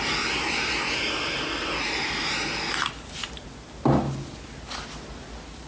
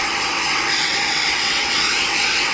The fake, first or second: second